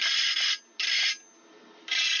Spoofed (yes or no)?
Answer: no